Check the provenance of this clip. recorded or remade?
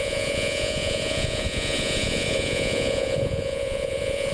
remade